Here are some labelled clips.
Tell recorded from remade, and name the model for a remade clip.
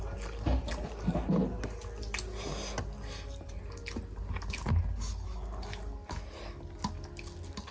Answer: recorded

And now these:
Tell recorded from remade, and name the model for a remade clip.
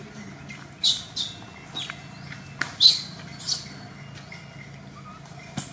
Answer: recorded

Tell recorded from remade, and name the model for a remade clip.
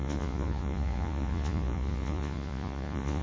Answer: remade, vocoder, Vocos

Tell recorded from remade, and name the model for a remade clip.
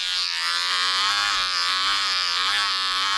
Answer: recorded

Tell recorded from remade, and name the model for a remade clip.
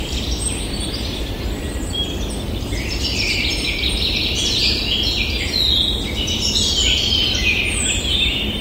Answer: recorded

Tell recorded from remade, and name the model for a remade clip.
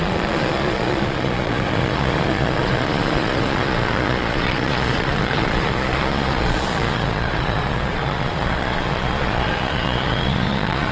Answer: remade, vocoder, Vocos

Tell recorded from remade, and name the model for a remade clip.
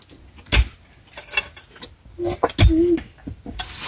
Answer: recorded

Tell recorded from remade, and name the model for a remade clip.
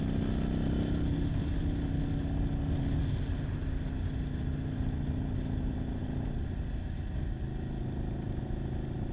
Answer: recorded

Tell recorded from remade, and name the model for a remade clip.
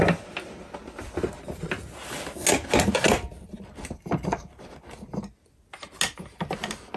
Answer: recorded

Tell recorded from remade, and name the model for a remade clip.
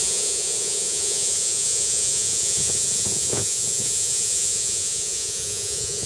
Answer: remade, vocoder, Vocos